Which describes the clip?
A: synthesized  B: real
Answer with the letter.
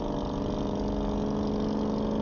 B